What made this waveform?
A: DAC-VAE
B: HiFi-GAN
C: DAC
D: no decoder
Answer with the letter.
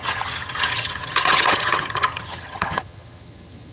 B